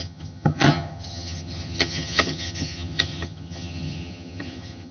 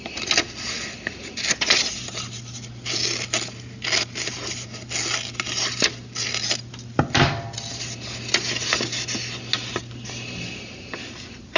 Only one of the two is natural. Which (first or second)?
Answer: second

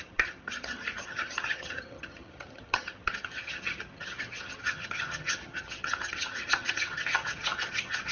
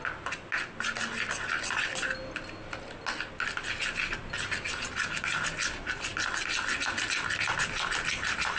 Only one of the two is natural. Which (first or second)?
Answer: second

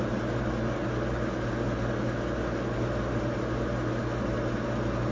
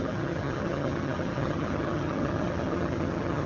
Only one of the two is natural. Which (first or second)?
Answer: first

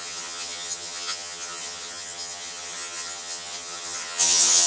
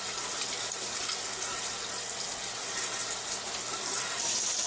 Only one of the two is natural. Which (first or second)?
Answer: second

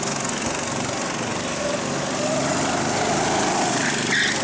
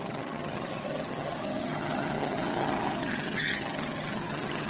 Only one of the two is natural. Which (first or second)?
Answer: first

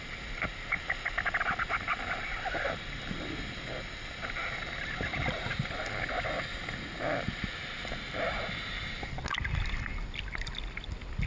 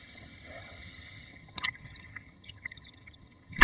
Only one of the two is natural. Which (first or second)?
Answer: first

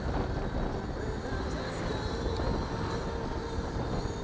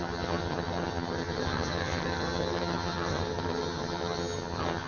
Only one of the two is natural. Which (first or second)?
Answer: first